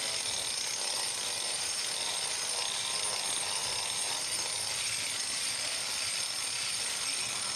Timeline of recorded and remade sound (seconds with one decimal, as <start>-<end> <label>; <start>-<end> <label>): 0.0-7.6 recorded